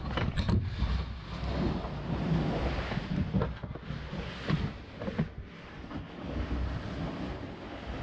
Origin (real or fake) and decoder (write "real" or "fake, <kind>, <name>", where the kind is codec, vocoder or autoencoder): real